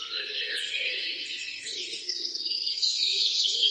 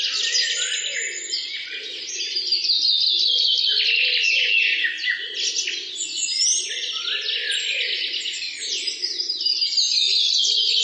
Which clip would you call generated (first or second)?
first